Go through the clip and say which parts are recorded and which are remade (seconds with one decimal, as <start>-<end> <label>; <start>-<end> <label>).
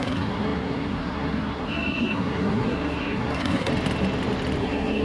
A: 0.0-3.7 remade; 3.7-4.6 recorded; 4.6-5.0 remade